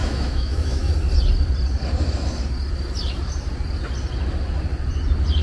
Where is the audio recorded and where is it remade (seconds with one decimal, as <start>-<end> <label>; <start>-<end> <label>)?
0.0-0.9 remade; 0.9-5.4 recorded